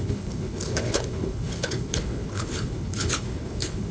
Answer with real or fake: fake